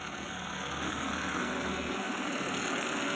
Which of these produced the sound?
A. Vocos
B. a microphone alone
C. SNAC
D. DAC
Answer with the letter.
C